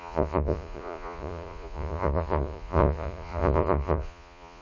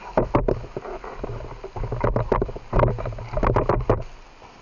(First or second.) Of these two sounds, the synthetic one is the first